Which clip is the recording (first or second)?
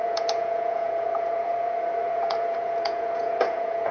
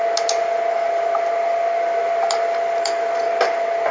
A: second